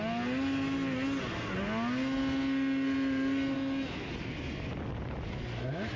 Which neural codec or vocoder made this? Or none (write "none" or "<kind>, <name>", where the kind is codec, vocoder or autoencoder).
none